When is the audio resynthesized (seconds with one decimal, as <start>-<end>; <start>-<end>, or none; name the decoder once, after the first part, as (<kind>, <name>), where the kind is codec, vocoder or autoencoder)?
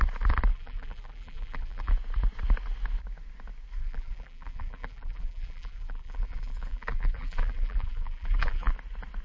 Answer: 0.5-1.9 (vocoder, BigVGAN v2); 3.8-8.7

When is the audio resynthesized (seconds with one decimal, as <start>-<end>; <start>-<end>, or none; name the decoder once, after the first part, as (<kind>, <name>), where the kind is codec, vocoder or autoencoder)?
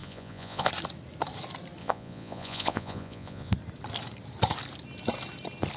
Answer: 0.0-0.7 (vocoder, Vocos); 1.8-3.5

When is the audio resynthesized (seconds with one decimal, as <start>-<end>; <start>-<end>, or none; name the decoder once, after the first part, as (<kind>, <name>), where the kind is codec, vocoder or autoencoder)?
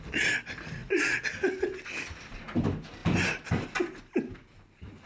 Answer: none